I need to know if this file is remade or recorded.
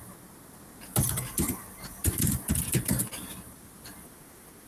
recorded